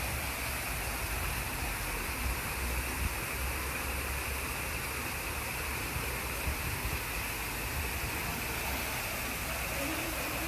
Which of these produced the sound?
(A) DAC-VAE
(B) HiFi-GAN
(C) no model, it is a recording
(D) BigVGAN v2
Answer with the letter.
C